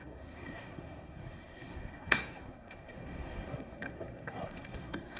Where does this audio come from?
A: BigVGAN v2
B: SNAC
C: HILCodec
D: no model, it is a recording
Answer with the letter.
B